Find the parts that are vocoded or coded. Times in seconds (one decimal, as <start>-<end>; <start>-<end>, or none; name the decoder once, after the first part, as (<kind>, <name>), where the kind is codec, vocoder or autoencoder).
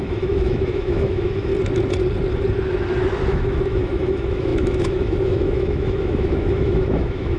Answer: 0.0-1.5 (autoencoder, DAC-VAE); 3.3-7.4